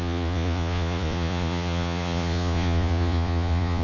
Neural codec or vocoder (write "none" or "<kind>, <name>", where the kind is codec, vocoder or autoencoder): vocoder, Vocos